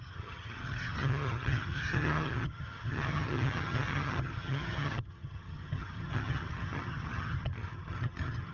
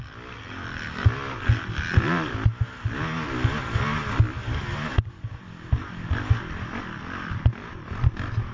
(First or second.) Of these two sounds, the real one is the second